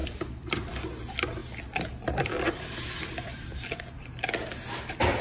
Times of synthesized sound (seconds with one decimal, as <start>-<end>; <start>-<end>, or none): none